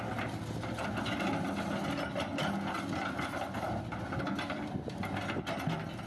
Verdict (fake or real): real